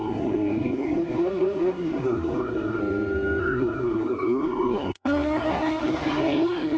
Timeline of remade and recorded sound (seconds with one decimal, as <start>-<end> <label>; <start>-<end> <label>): 0.0-2.8 remade; 2.8-3.4 recorded; 3.4-6.8 remade